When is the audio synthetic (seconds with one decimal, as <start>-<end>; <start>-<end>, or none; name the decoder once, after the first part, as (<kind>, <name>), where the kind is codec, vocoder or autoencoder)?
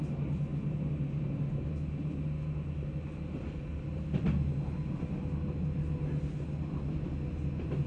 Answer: none